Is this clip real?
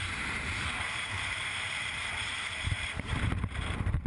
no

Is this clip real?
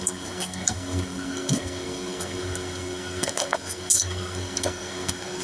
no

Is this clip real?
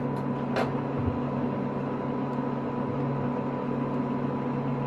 yes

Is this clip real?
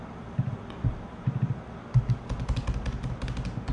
yes